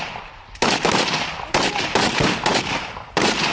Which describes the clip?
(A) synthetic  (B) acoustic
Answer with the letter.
B